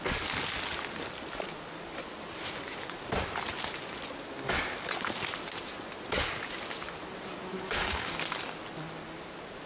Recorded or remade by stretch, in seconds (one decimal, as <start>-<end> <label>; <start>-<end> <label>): 0.0-7.5 recorded; 7.5-8.1 remade; 8.1-9.7 recorded